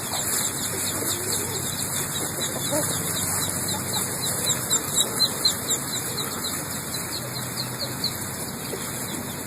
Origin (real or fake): real